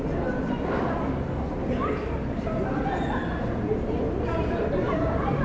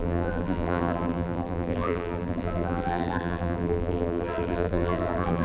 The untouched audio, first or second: first